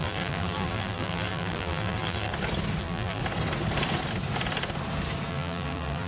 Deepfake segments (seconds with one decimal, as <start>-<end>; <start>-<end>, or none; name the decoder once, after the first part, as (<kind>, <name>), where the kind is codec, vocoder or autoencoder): 0.0-2.3 (vocoder, BigVGAN v2); 2.8-3.2; 5.3-6.1